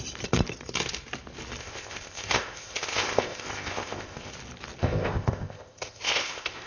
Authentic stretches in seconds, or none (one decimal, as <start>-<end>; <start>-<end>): 0.0-1.6; 4.3-4.8